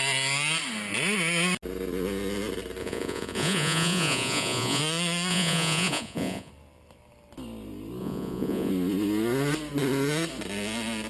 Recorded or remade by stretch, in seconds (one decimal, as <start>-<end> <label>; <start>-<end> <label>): 0.0-2.8 recorded; 2.8-4.8 remade; 4.8-5.3 recorded; 5.3-6.5 remade; 6.5-8.0 recorded; 8.0-8.7 remade; 8.7-11.1 recorded